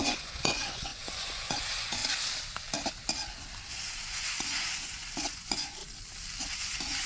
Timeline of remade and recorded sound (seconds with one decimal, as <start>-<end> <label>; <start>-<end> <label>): 0.0-2.0 remade; 2.0-3.7 recorded; 3.7-5.8 remade; 5.8-6.4 recorded; 6.4-7.1 remade